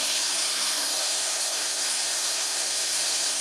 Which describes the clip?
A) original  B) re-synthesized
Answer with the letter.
B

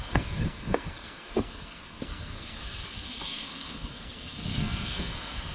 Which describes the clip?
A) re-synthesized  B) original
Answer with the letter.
A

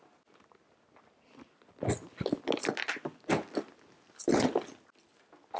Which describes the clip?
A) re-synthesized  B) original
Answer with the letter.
B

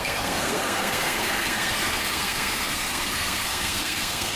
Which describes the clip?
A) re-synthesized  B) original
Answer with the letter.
A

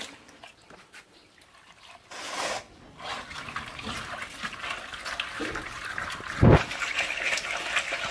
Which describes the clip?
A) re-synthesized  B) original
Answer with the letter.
B